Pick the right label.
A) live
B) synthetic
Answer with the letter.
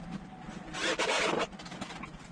A